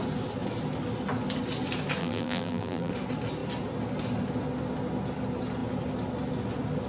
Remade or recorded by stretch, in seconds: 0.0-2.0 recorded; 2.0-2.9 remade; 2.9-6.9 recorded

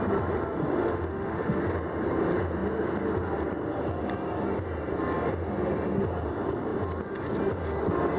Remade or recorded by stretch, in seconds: 0.0-0.8 recorded; 0.8-1.6 remade; 1.6-8.2 recorded

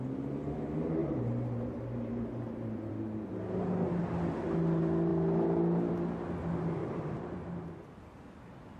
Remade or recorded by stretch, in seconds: 0.0-1.0 recorded; 1.0-2.9 remade; 2.9-6.8 recorded; 6.8-7.6 remade; 7.6-8.8 recorded

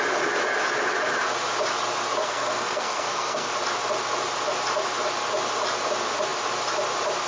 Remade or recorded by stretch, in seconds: 0.0-2.2 recorded; 2.2-3.5 remade; 3.5-7.3 recorded

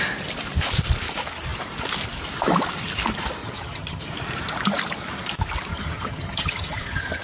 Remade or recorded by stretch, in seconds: 0.0-3.4 recorded; 3.4-4.0 remade; 4.0-5.7 recorded; 5.7-7.2 remade

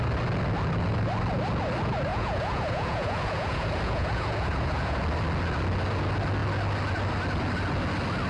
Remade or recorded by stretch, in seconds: 0.0-2.1 recorded; 2.1-5.0 remade; 5.0-8.3 recorded